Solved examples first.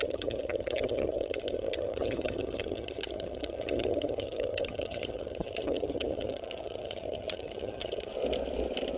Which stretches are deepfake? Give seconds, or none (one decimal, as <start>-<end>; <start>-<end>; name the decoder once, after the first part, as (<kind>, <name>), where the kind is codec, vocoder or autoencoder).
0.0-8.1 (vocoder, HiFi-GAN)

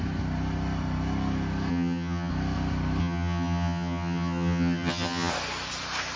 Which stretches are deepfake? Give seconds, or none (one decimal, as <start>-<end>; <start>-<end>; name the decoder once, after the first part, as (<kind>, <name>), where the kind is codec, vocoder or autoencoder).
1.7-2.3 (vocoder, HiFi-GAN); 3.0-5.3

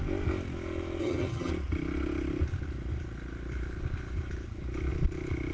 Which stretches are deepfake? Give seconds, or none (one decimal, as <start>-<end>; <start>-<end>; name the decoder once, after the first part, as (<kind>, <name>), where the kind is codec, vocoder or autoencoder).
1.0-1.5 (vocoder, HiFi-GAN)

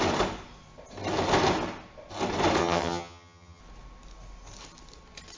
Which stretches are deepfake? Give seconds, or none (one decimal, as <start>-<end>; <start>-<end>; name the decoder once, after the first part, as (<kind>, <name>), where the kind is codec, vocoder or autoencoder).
2.6-3.6 (vocoder, HiFi-GAN)

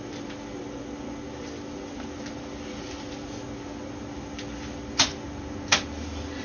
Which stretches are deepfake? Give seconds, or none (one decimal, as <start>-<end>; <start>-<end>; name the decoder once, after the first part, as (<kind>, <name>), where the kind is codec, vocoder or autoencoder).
none